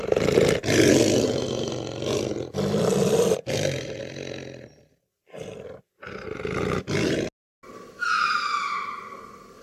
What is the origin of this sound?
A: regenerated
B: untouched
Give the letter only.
B